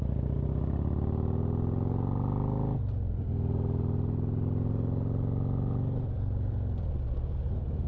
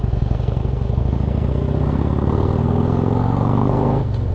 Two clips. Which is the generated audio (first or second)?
second